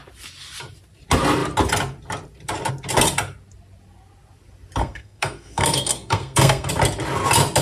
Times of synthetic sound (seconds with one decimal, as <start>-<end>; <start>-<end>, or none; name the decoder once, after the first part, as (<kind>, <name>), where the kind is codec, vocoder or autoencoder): 4.8-6.7 (codec, SNAC)